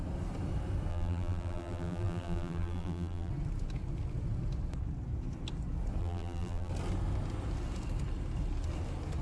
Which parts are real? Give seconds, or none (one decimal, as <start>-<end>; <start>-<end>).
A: 0.0-0.9; 3.3-6.0; 6.7-9.2